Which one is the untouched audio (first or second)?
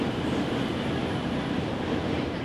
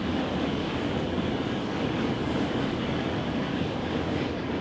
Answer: first